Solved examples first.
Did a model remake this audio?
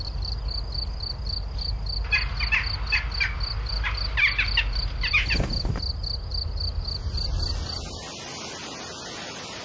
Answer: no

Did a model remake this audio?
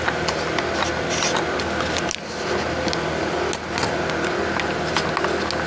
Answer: no